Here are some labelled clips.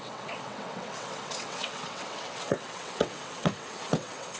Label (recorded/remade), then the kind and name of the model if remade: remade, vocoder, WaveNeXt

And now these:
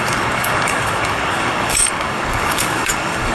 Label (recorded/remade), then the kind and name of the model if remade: remade, codec, DAC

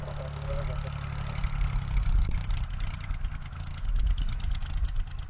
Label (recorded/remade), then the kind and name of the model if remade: recorded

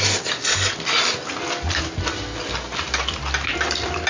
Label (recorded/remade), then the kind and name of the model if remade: recorded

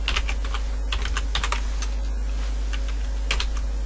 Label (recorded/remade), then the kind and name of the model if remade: recorded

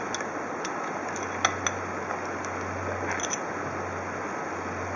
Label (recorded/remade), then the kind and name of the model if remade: recorded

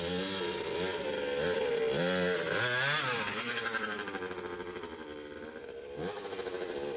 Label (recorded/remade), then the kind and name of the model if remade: recorded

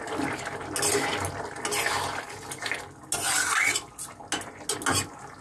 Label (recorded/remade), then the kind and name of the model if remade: recorded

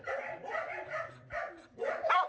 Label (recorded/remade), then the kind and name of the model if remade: recorded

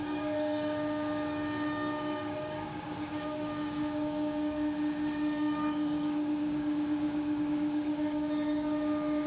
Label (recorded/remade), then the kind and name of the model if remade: remade, codec, DAC